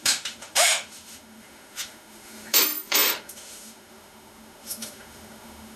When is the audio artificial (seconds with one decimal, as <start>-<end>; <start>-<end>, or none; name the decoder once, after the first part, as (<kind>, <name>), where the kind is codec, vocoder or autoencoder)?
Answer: 0.0-5.8 (autoencoder, DAC-VAE)